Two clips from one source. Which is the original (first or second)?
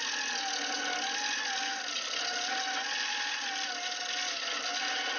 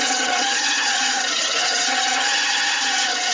first